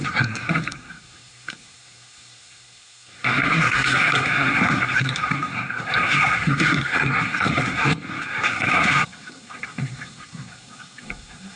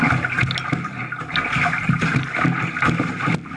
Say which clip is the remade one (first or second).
first